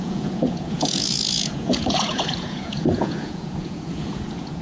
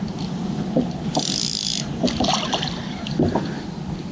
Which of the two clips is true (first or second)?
second